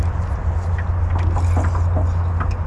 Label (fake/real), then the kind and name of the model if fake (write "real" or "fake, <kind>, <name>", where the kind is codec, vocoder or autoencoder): real